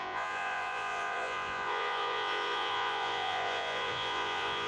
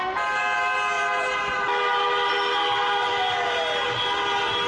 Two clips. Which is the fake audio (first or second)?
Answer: first